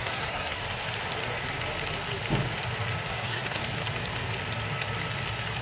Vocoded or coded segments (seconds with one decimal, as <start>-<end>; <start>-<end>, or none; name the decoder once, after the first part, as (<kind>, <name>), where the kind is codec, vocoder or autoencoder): 0.0-0.6 (codec, SNAC); 3.1-3.6